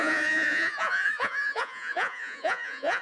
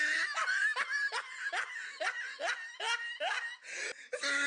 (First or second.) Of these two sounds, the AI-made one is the first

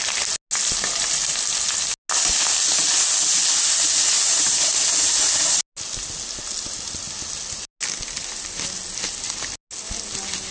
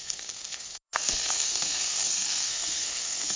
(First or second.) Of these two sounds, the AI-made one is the second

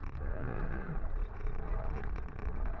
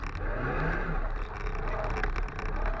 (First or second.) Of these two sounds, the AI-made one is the first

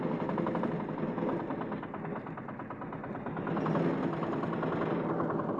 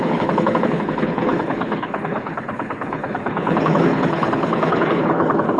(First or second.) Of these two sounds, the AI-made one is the second